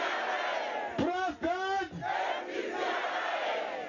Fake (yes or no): no